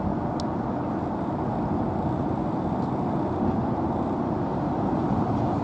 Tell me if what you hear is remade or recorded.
recorded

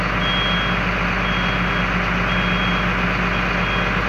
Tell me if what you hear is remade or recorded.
recorded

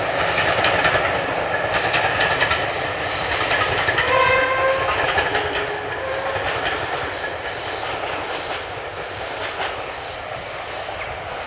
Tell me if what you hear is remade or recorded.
recorded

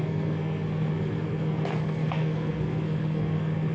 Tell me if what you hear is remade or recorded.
remade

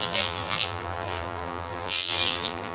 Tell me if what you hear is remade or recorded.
remade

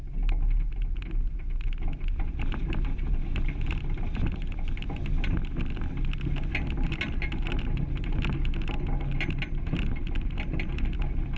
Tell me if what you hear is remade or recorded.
recorded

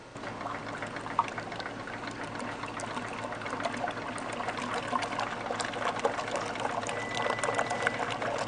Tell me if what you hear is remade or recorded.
recorded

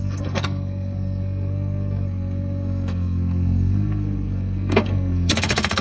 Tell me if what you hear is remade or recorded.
remade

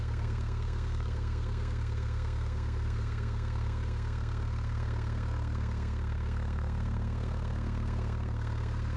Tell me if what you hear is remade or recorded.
remade